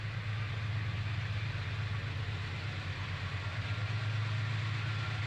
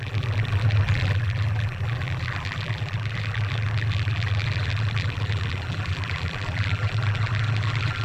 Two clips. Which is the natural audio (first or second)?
first